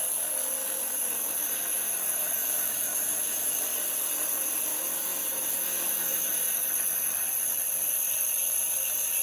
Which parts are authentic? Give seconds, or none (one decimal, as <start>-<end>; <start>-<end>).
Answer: 0.0-0.6; 3.6-4.7; 6.7-9.2